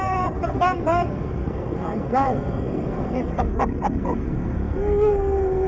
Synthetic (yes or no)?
yes